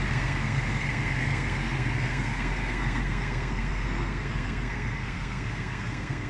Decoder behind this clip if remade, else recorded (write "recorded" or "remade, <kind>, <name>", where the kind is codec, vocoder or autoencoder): remade, codec, SNAC